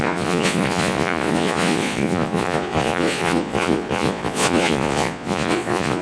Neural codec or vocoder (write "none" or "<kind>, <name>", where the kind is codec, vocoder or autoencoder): vocoder, Vocos